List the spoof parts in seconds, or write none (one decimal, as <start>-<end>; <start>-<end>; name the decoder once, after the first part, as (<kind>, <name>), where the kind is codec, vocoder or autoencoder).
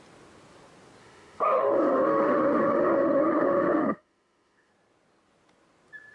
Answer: 1.0-4.7 (autoencoder, DAC-VAE)